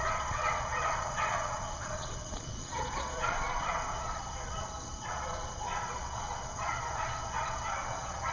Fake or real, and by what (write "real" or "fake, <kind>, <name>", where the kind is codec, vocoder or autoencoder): fake, vocoder, Vocos